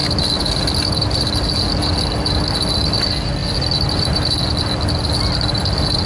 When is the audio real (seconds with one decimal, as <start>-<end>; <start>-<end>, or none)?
0.0-6.1